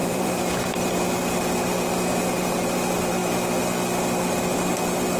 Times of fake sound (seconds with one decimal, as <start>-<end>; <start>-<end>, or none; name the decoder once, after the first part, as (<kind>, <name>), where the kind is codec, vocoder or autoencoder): 0.0-0.5 (vocoder, BigVGAN v2)